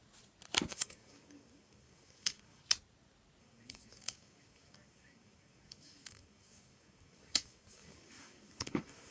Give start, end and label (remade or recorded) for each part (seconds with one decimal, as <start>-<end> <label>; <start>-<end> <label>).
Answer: 0.0-0.7 recorded; 0.7-2.6 remade; 2.6-3.4 recorded; 3.4-9.1 remade